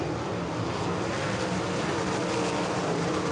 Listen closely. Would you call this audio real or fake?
real